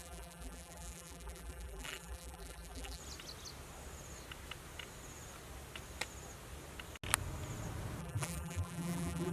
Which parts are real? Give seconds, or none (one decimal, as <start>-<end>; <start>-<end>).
3.0-8.0